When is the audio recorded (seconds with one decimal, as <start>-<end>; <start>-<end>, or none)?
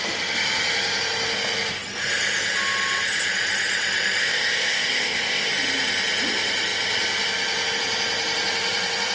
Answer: 0.0-4.2; 5.5-9.1